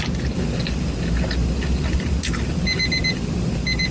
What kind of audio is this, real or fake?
real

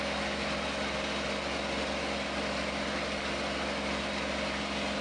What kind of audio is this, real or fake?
real